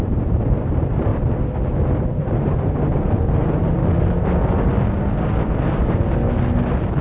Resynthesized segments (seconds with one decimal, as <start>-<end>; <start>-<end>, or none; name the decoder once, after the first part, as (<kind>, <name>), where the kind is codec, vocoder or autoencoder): 0.0-1.1 (vocoder, BigVGAN v2); 2.0-3.8; 5.5-6.0